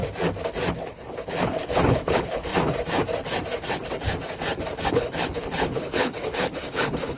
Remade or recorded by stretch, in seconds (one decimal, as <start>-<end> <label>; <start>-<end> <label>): 0.0-0.7 recorded; 0.7-2.5 remade; 2.5-4.9 recorded; 4.9-7.2 remade